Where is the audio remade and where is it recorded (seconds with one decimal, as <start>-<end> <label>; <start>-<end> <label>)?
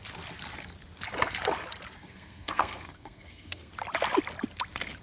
0.0-2.0 recorded; 2.0-3.7 remade; 3.7-5.0 recorded